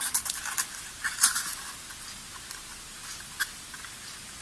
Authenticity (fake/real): real